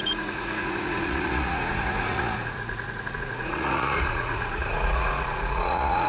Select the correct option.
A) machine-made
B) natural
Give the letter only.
A